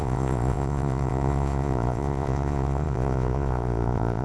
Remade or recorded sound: remade